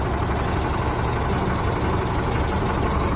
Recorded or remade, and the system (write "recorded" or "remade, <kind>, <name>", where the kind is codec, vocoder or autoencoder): recorded